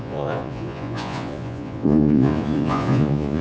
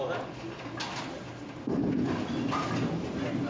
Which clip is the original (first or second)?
second